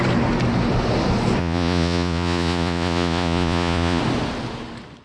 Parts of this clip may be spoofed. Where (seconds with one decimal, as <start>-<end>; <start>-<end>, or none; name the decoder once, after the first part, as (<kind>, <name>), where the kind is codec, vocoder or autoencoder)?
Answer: 1.4-4.0 (vocoder, Vocos)